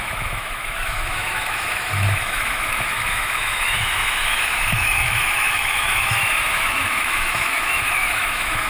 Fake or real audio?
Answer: fake